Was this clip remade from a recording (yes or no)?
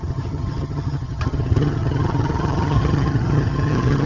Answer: yes